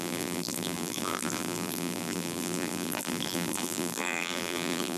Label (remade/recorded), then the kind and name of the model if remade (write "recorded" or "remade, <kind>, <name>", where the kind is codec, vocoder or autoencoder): remade, vocoder, BigVGAN v2